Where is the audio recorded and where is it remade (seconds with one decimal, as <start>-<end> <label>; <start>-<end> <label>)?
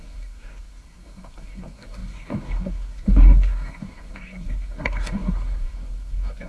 0.0-6.5 remade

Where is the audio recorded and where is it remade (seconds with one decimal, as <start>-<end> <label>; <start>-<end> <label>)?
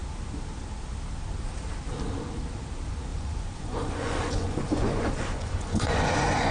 0.0-3.1 recorded; 3.1-6.5 remade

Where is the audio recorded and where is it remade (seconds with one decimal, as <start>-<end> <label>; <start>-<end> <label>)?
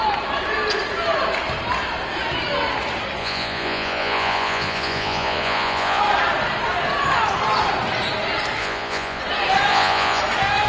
0.0-3.2 recorded; 3.2-6.0 remade; 6.0-8.6 recorded; 8.6-9.2 remade; 9.2-9.7 recorded; 9.7-10.2 remade; 10.2-10.7 recorded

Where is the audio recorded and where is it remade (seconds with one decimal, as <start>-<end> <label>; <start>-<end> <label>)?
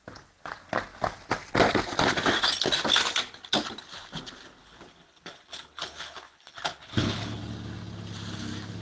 0.0-4.6 recorded; 4.6-7.4 remade; 7.4-8.8 recorded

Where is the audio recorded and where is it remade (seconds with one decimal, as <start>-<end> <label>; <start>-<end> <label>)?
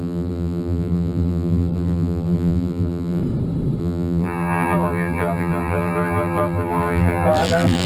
0.0-3.2 remade; 3.2-3.8 recorded; 3.8-7.9 remade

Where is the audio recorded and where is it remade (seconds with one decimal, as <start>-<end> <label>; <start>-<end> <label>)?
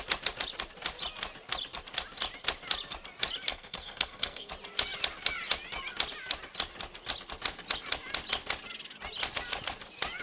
0.0-3.5 recorded; 3.5-4.5 remade; 4.5-10.2 recorded